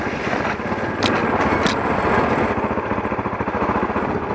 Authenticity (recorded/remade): recorded